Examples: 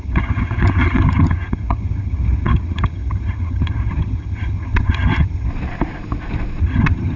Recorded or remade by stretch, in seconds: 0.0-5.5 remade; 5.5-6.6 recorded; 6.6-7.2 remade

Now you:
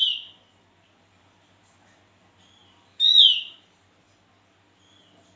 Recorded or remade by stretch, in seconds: 0.0-5.4 recorded

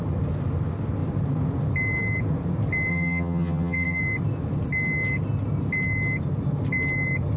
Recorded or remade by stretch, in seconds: 0.0-2.9 recorded; 2.9-4.0 remade; 4.0-7.4 recorded

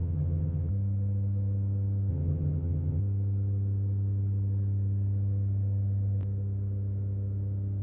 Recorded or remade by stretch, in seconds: 0.0-0.7 remade; 0.7-2.1 recorded; 2.1-3.0 remade; 3.0-7.8 recorded

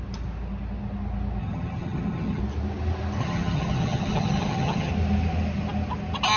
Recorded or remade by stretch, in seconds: 0.0-1.4 recorded; 1.4-2.4 remade; 2.4-3.2 recorded; 3.2-4.9 remade; 4.9-6.4 recorded

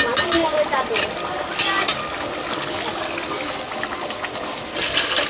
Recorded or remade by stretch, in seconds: 0.0-5.3 recorded

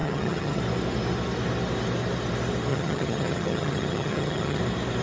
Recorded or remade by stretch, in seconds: 0.0-0.6 remade; 0.6-2.7 recorded; 2.7-4.6 remade; 4.6-5.0 recorded